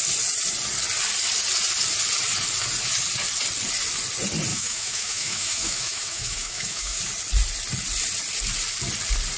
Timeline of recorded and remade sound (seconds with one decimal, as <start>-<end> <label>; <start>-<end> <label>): 0.0-4.5 recorded; 4.5-7.0 remade; 7.0-9.4 recorded